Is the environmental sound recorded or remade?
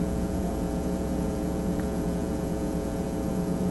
remade